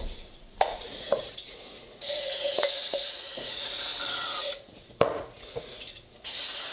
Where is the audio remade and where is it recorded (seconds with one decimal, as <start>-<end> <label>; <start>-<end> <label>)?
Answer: 0.0-3.9 remade; 3.9-4.4 recorded; 4.4-6.7 remade